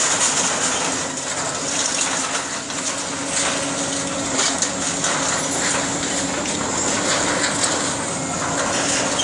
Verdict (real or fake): real